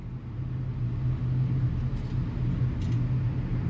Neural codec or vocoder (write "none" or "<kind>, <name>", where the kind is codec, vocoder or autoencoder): none